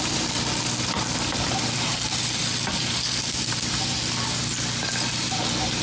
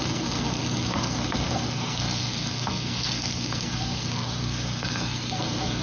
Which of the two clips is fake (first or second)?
second